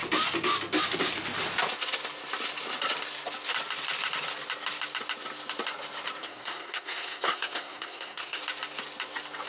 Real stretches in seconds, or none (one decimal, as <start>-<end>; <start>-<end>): 0.0-6.2; 8.4-9.5